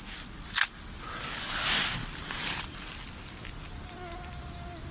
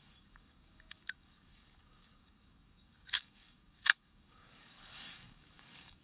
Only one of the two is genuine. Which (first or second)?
first